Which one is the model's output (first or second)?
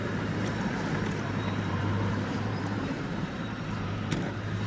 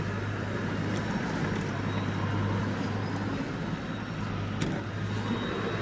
first